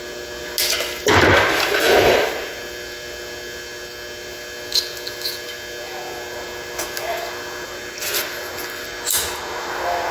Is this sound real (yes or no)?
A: yes